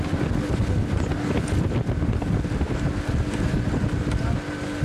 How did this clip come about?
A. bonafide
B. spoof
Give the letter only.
A